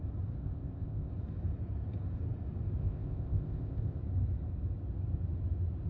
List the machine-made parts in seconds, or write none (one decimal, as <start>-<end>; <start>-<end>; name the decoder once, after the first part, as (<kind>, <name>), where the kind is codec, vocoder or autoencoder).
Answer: 0.4-1.1 (codec, ZipCodec); 2.8-4.0